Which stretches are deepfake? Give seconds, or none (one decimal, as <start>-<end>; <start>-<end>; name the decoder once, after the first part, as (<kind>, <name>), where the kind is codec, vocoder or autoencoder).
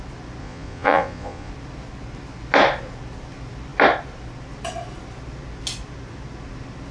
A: 0.4-1.5 (vocoder, Vocos)